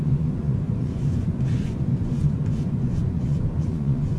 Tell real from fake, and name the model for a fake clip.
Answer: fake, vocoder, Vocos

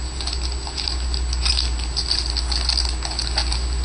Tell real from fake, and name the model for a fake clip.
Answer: real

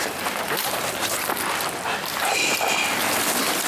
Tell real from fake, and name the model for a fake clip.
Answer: real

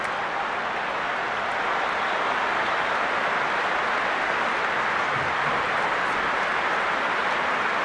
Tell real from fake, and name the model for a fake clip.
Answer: real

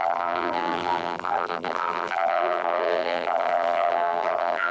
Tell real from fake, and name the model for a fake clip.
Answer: fake, vocoder, BigVGAN v2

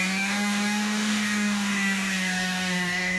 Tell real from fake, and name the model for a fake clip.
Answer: fake, codec, DAC